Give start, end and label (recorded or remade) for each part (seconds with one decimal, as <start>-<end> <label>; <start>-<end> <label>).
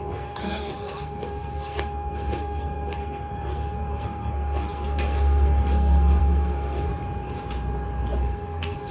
0.0-6.9 remade; 6.9-8.2 recorded; 8.2-8.9 remade